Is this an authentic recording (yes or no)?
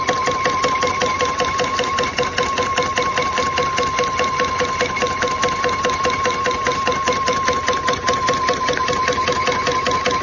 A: yes